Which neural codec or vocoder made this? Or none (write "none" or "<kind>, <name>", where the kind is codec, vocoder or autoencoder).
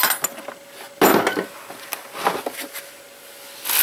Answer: none